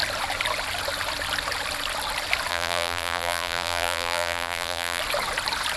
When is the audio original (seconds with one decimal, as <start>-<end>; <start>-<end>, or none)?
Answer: 0.0-2.5; 5.0-5.8